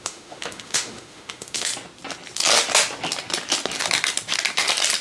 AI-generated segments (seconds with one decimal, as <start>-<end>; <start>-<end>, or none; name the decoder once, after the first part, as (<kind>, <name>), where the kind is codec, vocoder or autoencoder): 0.0-1.7 (autoencoder, DAC-VAE)